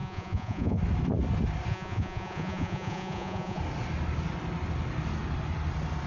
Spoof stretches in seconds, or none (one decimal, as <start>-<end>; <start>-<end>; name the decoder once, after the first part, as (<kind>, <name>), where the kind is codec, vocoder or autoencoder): 0.0-0.8 (vocoder, Vocos); 1.7-3.6